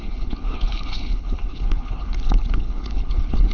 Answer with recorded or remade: remade